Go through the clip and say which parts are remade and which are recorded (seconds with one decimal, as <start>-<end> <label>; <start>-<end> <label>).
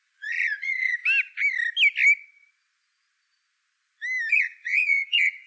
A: 0.0-1.0 remade; 1.0-4.3 recorded; 4.3-5.5 remade